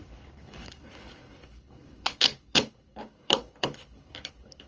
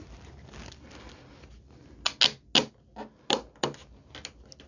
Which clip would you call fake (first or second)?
first